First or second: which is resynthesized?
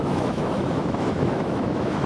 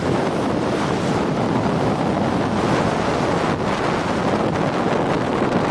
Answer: first